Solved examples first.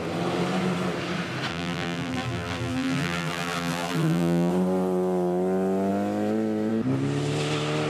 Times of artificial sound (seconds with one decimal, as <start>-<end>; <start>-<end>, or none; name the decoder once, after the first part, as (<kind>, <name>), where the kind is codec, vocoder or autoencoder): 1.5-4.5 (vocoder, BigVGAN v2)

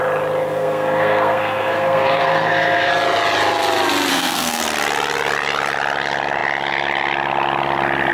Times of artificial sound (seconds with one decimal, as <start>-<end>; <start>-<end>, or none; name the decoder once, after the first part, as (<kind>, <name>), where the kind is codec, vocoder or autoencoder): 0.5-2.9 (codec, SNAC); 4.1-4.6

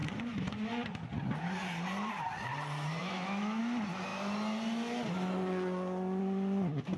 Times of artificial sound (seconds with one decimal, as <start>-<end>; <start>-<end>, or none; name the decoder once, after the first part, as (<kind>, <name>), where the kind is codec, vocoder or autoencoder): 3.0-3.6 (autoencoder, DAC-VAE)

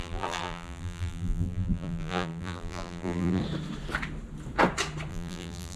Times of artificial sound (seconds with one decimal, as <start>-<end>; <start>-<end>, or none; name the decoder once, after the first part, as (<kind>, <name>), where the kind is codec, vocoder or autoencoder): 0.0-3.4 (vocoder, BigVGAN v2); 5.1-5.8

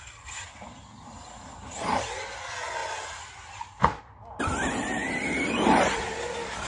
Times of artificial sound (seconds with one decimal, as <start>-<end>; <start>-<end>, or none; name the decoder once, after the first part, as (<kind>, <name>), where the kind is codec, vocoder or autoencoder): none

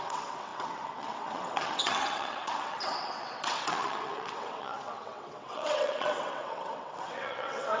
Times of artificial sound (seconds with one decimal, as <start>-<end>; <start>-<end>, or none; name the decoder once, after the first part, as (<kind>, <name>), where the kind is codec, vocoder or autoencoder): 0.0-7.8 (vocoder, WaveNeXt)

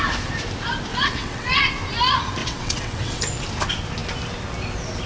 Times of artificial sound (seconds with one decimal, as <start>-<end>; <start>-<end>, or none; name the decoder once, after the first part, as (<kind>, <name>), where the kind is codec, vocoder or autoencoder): 0.9-1.6 (vocoder, WaveNeXt); 2.4-3.2

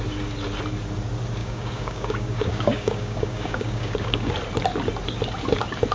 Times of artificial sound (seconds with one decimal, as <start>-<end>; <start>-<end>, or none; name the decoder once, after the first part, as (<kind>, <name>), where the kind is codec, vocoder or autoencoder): 1.4-4.3 (codec, DAC)